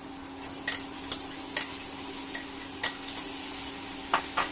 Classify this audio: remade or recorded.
recorded